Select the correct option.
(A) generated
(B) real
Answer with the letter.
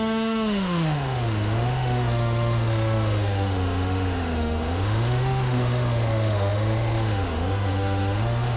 A